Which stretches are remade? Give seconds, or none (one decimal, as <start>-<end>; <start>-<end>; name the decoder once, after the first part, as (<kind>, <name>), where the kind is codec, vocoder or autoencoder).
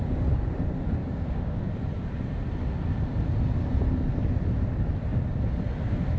1.0-1.6 (codec, DAC)